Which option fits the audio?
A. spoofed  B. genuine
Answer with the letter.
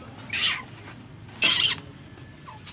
B